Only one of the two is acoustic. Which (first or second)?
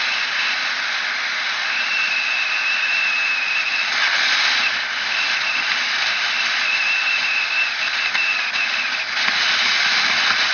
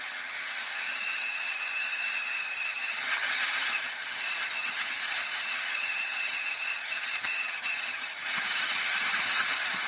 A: first